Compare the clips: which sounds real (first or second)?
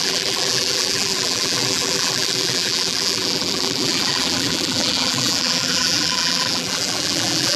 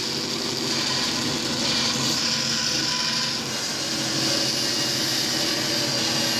second